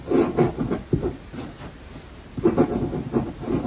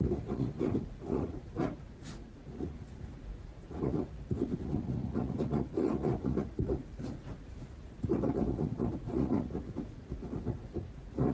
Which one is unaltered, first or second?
first